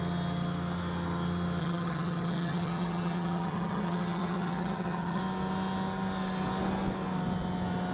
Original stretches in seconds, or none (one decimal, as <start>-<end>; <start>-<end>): 0.0-1.6; 5.2-7.9